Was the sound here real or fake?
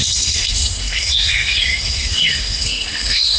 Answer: fake